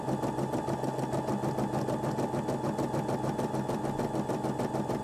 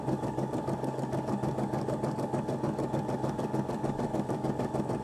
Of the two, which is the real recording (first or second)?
first